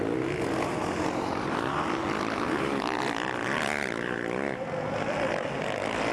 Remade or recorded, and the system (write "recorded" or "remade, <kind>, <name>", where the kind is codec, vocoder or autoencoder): recorded